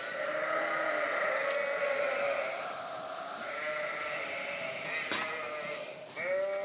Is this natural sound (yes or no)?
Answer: yes